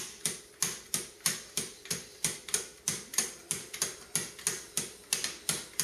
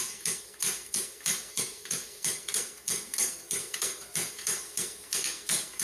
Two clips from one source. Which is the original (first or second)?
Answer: first